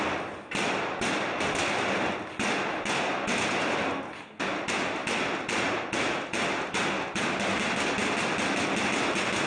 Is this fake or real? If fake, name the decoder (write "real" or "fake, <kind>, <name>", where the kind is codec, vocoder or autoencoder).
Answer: real